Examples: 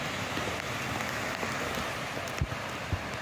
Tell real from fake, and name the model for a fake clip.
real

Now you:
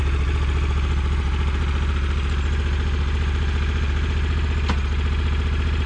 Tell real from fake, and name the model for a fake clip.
real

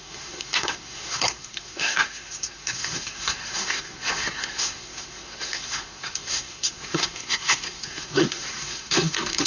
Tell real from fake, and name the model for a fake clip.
fake, codec, SNAC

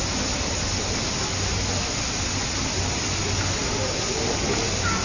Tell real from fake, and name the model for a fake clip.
real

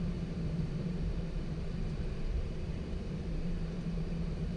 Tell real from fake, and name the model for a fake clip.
fake, vocoder, BigVGAN v2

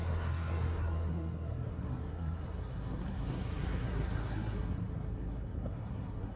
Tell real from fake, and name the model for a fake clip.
fake, codec, SNAC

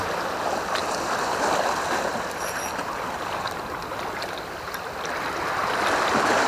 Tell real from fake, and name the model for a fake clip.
real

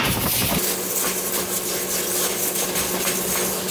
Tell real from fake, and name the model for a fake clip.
real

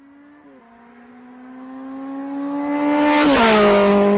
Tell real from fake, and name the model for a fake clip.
real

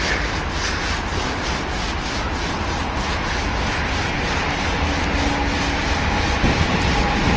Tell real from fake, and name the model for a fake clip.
real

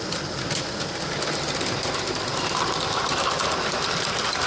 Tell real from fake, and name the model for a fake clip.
real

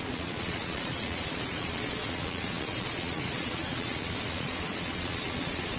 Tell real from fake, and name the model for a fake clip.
fake, vocoder, Vocos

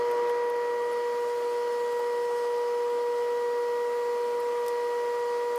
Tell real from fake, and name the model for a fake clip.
real